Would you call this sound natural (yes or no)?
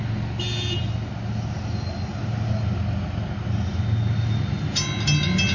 yes